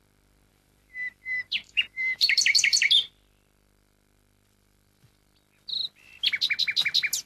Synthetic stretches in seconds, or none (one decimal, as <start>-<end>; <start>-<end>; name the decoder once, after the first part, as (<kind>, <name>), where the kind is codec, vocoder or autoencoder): 0.5-3.1 (vocoder, BigVGAN v2)